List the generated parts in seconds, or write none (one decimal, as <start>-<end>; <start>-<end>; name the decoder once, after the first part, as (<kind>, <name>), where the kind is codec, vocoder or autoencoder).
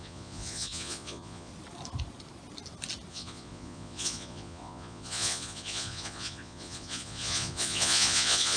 0.0-1.5 (vocoder, Vocos); 3.1-8.6